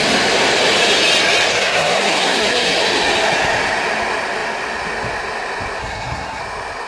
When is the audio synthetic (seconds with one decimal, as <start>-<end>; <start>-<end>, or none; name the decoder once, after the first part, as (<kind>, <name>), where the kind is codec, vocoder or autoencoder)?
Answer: 1.5-2.8 (codec, SNAC); 5.8-6.4